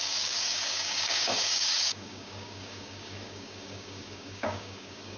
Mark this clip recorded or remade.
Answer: remade